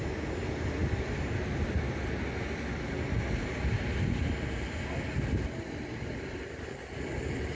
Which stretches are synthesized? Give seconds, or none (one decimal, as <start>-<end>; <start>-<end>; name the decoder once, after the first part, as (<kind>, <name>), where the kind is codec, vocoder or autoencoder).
none